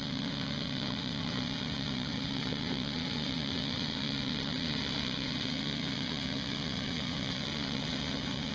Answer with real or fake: fake